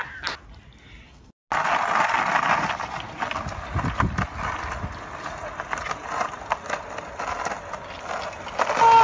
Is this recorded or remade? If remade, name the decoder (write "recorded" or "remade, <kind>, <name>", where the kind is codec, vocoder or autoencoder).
recorded